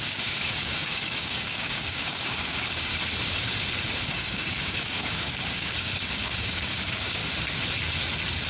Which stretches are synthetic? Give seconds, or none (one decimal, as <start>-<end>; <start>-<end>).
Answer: 0.0-2.9; 4.0-7.2